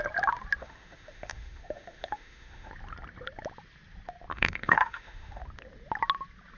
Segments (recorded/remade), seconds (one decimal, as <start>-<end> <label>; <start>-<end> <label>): 0.0-0.6 recorded; 0.6-2.7 remade; 2.7-4.3 recorded; 4.3-5.4 remade; 5.4-6.6 recorded